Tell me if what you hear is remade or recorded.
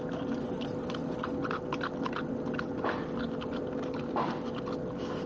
recorded